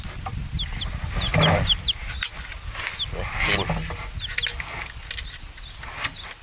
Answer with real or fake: real